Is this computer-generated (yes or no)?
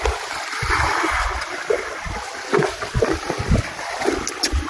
no